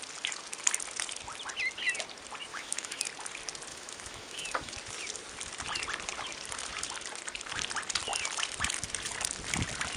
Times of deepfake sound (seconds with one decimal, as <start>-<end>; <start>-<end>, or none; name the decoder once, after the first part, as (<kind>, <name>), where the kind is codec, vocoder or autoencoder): 2.5-3.0 (autoencoder, DAC-VAE); 3.7-4.7